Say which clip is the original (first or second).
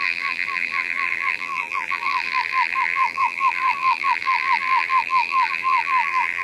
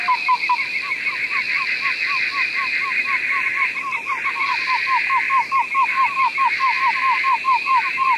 second